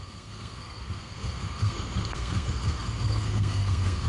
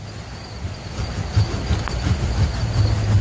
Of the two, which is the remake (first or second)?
first